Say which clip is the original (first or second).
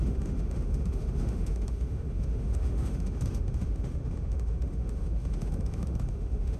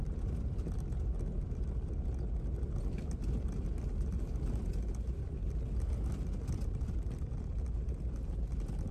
second